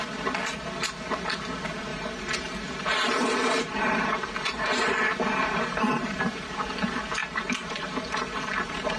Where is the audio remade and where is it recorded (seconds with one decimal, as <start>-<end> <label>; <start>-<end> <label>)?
0.0-1.9 recorded; 1.9-6.2 remade; 6.2-7.2 recorded; 7.2-9.0 remade